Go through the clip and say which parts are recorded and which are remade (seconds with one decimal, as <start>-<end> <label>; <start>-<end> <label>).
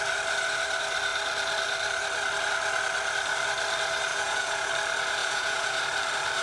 0.0-4.1 recorded; 4.1-4.7 remade; 4.7-5.2 recorded; 5.2-5.8 remade; 5.8-6.4 recorded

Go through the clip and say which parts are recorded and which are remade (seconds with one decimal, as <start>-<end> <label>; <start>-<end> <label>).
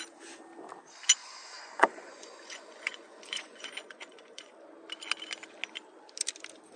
0.0-1.2 recorded; 1.2-4.5 remade; 4.5-6.8 recorded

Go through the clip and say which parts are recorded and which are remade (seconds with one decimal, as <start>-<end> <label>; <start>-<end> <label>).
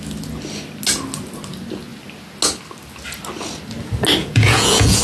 0.0-4.2 recorded; 4.2-5.0 remade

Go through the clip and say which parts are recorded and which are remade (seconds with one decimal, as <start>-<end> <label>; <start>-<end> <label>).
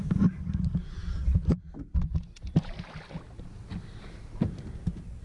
0.0-5.2 recorded